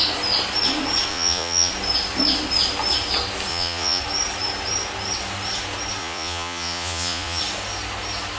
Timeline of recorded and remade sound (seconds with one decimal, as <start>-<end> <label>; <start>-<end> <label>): 0.0-1.1 recorded; 1.1-1.7 remade; 1.7-3.5 recorded; 3.5-4.0 remade; 4.0-6.0 recorded; 6.0-7.4 remade; 7.4-8.4 recorded